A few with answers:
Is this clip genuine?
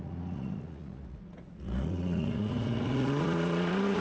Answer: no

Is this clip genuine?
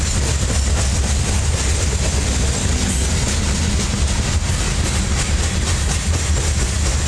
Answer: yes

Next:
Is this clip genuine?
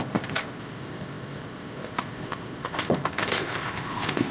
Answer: no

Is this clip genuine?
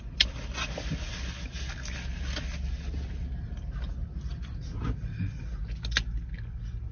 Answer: yes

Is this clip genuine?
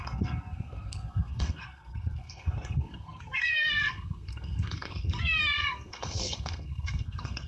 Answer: no